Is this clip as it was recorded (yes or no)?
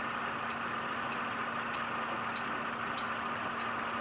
yes